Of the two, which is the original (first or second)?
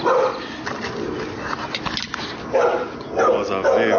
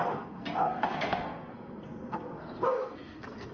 first